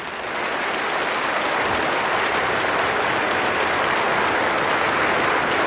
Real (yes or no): yes